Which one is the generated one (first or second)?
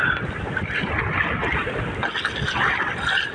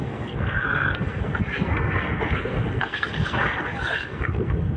second